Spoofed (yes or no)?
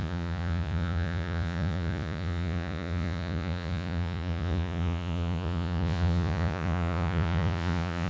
yes